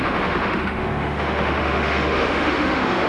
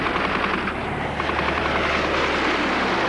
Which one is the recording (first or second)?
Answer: second